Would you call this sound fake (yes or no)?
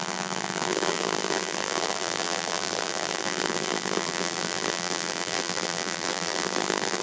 yes